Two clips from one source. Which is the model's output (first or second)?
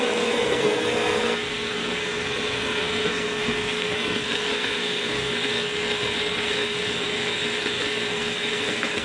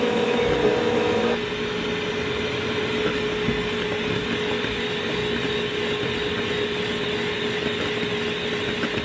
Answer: first